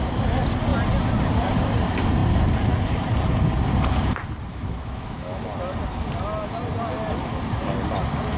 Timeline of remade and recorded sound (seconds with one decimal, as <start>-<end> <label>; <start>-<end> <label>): 0.0-4.5 recorded; 4.5-5.4 remade; 5.4-8.4 recorded